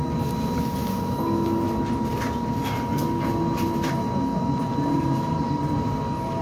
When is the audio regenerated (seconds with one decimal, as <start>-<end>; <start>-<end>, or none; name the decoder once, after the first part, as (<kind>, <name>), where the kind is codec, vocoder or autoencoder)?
none